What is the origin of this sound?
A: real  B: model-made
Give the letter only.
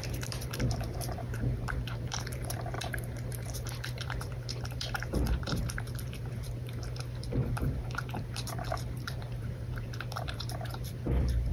B